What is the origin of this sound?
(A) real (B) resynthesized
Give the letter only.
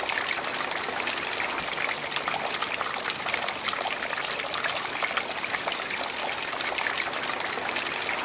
A